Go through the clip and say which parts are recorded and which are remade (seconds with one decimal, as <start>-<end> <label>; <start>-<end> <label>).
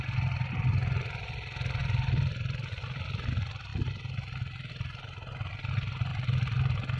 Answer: 0.0-1.8 recorded; 1.8-3.3 remade; 3.3-6.1 recorded; 6.1-7.0 remade